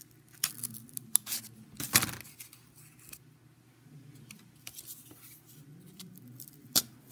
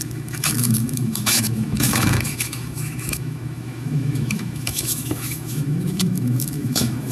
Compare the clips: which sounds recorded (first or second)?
first